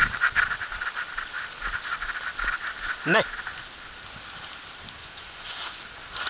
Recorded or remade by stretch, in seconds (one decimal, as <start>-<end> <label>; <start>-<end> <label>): 0.0-5.0 recorded; 5.0-5.8 remade; 5.8-6.3 recorded